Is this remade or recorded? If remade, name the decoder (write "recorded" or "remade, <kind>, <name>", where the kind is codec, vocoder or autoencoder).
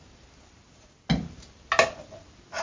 recorded